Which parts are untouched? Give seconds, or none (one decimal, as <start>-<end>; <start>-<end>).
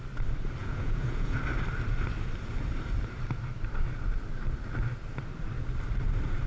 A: 0.0-0.6; 1.4-6.5